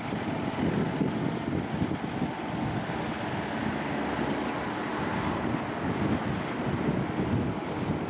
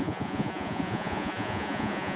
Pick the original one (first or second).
first